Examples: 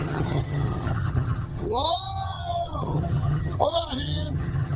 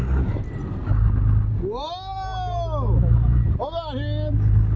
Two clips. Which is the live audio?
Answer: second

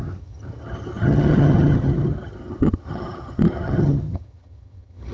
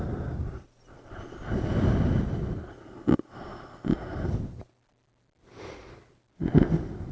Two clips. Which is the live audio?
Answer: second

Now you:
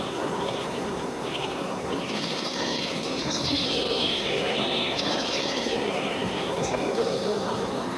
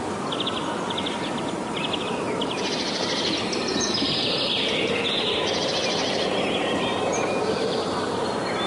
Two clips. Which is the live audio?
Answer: second